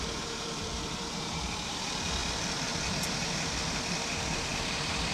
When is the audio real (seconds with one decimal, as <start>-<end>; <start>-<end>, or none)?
none